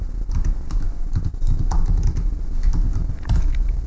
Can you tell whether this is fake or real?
real